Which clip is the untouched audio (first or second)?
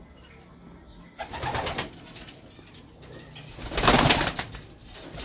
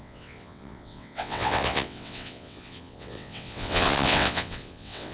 first